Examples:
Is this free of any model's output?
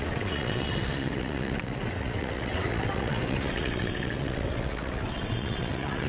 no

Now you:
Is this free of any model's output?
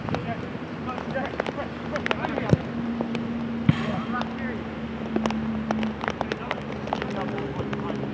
yes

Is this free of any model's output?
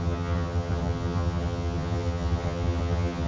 no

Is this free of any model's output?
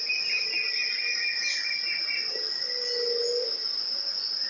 yes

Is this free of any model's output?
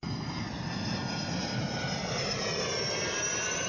no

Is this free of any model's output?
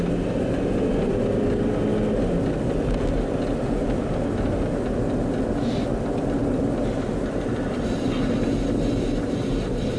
yes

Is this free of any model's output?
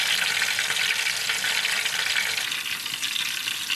yes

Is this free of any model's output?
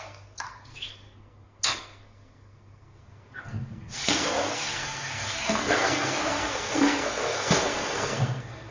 no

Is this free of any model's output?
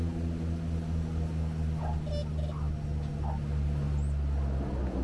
yes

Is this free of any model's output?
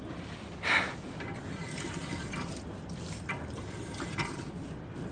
yes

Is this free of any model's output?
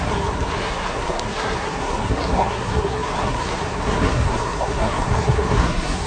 no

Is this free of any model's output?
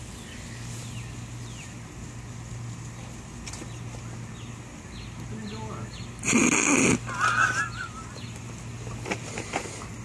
yes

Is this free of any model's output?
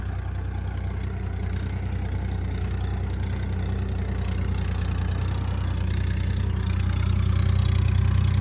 yes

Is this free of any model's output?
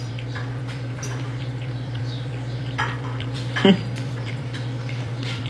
no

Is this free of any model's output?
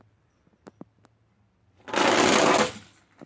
yes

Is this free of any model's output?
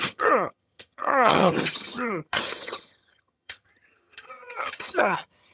no